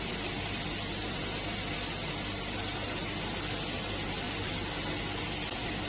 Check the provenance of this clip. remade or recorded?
recorded